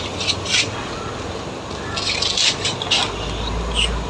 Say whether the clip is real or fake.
real